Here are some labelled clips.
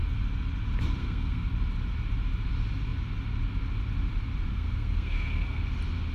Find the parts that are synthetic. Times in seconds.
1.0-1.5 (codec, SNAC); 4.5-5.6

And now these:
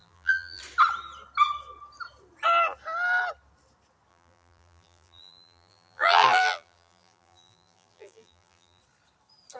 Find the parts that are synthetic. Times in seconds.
0.0-0.6 (vocoder, BigVGAN v2); 4.1-8.8

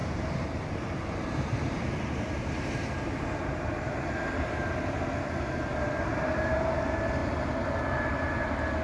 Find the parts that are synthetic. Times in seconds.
0.0-5.0 (vocoder, BigVGAN v2); 5.7-6.8